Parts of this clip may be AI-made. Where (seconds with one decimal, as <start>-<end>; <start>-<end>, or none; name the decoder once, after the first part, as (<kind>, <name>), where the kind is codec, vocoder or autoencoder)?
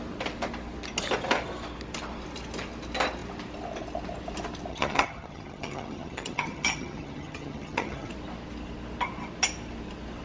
4.7-8.1 (vocoder, HiFi-GAN)